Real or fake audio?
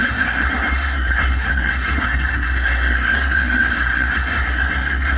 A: fake